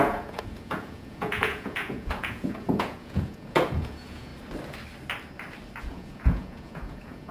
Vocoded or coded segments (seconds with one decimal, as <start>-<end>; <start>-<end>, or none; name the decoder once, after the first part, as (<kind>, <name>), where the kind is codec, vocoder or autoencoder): 0.0-4.3 (vocoder, Vocos); 5.8-7.3